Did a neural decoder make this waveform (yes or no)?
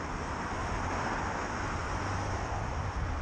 no